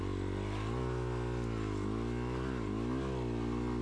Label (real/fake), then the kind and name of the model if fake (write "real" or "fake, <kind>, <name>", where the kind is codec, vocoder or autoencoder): real